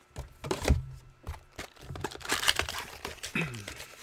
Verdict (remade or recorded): recorded